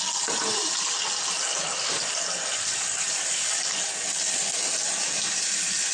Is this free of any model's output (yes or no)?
yes